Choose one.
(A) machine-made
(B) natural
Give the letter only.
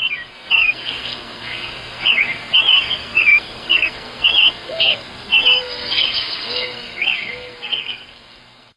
A